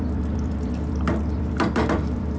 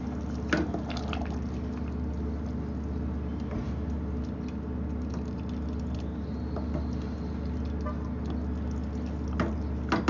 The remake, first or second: first